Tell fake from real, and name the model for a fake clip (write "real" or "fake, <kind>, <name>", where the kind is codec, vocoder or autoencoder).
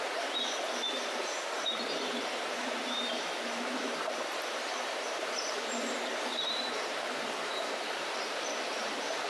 fake, vocoder, BigVGAN v2